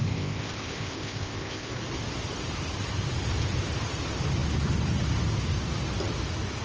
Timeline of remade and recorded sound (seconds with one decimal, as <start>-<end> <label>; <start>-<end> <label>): 0.0-1.7 remade; 1.7-6.6 recorded